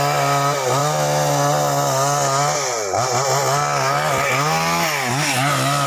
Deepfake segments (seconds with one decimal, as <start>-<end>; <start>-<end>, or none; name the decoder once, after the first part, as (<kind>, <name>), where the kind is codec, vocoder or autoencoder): none